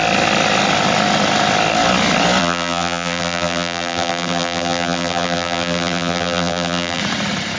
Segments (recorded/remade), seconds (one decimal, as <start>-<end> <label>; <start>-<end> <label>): 0.0-2.4 recorded; 2.4-7.0 remade; 7.0-7.6 recorded